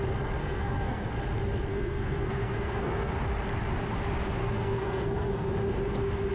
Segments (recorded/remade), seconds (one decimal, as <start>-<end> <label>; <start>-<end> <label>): 0.0-0.4 recorded; 0.4-1.1 remade; 1.1-1.7 recorded; 1.7-3.1 remade; 3.1-4.4 recorded; 4.4-5.5 remade; 5.5-6.3 recorded